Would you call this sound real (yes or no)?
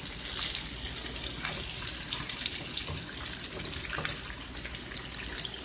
yes